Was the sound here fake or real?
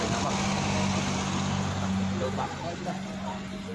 real